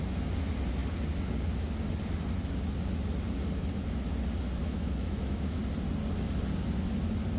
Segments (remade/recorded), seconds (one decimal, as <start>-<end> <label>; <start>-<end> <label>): 0.0-4.6 recorded; 4.6-5.6 remade; 5.6-7.4 recorded